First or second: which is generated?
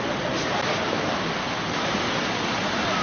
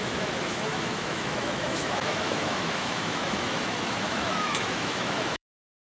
second